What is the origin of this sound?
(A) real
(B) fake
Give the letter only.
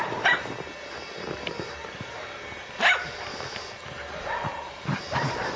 A